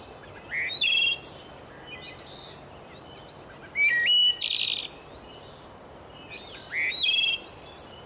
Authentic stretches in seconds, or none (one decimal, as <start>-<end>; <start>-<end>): 0.0-8.1